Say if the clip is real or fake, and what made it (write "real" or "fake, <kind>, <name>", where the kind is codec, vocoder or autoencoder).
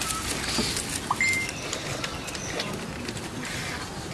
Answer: real